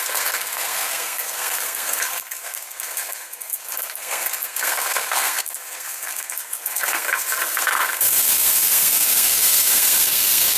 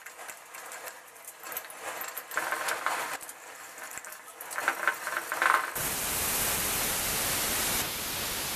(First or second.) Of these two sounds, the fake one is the first